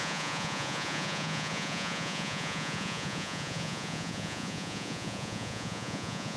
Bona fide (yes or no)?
no